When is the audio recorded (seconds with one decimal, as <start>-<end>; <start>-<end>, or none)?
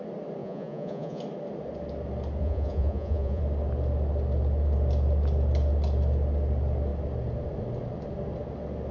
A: 0.0-0.4; 1.2-2.4; 3.4-8.9